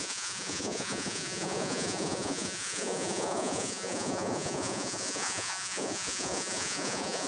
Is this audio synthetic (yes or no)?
yes